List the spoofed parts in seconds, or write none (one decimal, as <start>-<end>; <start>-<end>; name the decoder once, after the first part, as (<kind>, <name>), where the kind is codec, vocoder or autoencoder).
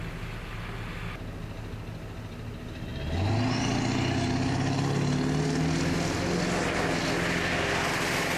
none